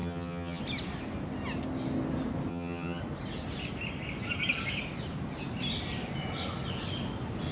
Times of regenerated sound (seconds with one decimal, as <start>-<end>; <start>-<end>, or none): 0.0-0.6; 2.5-3.0